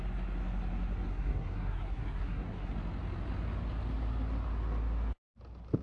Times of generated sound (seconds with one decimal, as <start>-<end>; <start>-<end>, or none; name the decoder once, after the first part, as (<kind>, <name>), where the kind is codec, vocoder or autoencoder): 1.1-2.7 (codec, SNAC)